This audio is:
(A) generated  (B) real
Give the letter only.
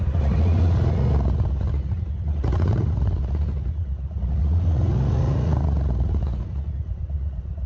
A